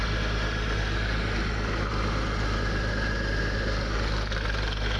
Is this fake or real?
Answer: real